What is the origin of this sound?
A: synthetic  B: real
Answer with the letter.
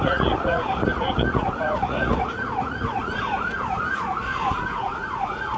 A